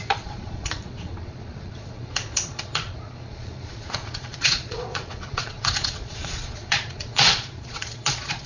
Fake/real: fake